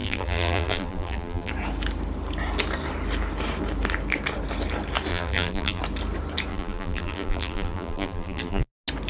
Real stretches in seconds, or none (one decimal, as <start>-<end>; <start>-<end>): 1.5-5.1; 5.8-6.5; 8.7-9.1

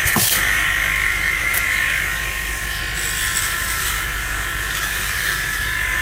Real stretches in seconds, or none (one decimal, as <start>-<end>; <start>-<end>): 2.8-3.4

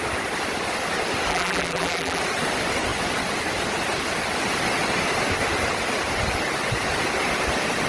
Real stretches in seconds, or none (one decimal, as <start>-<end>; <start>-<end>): 0.0-1.3; 2.2-7.9